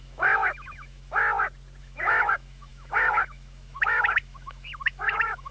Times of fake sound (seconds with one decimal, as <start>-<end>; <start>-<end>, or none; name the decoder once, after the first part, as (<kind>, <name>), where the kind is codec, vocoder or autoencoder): 0.0-1.2 (autoencoder, DAC-VAE); 1.8-5.5